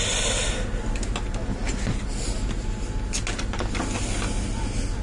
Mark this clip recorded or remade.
recorded